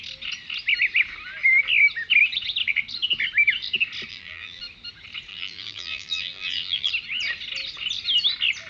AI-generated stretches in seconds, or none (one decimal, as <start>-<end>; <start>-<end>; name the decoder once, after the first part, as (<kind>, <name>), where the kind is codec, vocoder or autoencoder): 4.1-4.6 (vocoder, BigVGAN v2); 5.3-6.9